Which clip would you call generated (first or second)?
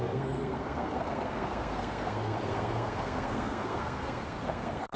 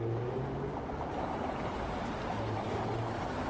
first